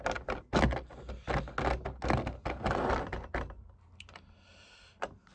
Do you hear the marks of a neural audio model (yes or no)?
no